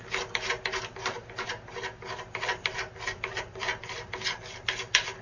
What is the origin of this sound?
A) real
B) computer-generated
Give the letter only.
A